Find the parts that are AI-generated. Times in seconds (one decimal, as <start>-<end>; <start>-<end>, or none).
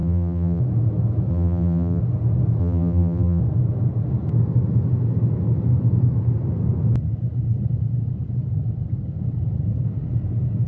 0.0-0.6; 1.3-2.0; 2.6-3.4